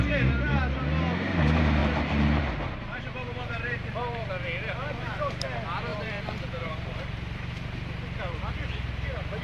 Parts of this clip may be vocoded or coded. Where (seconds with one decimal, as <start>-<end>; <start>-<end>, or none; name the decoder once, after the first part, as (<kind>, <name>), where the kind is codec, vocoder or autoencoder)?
1.8-4.3 (vocoder, BigVGAN v2); 5.9-8.5

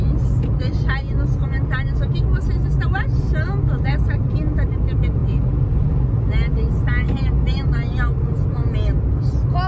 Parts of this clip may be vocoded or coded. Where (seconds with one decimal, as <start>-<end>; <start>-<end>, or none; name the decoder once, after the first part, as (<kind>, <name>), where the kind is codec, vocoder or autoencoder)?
none

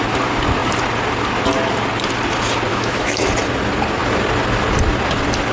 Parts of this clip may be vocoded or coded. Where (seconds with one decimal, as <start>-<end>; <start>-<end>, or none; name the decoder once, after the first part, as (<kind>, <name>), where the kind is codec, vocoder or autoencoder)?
2.7-3.3 (autoencoder, DAC-VAE)